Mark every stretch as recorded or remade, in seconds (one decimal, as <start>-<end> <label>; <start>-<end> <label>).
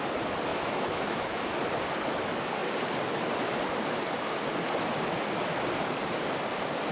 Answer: 0.0-0.5 recorded; 0.5-1.4 remade; 1.4-6.9 recorded